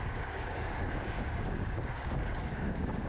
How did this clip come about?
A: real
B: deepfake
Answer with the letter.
B